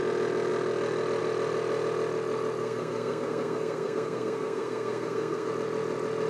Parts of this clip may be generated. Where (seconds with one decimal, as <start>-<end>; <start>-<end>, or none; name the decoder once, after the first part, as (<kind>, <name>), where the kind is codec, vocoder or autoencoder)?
2.6-5.5 (codec, SNAC)